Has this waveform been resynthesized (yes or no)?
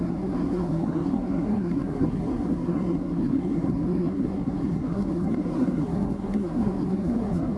yes